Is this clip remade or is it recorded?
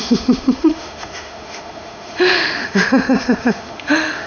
remade